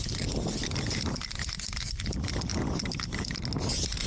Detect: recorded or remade recorded